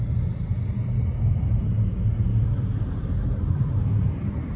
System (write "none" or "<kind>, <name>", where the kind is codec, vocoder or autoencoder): none